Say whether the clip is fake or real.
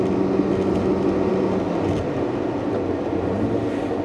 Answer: real